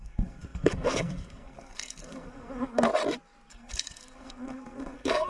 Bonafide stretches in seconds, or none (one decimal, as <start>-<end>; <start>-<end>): 2.9-3.5